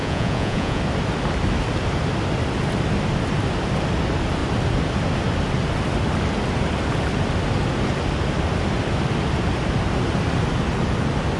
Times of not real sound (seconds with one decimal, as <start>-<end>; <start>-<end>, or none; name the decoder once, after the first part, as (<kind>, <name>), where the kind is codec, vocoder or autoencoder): 0.0-0.8 (vocoder, Vocos)